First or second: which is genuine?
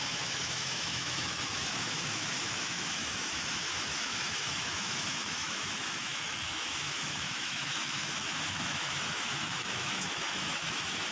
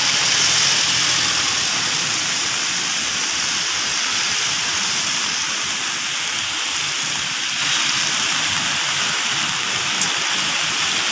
second